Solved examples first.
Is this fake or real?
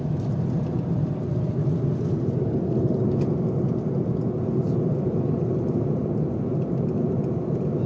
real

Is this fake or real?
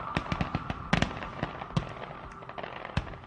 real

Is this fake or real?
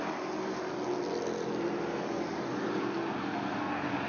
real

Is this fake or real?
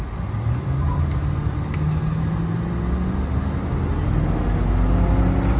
real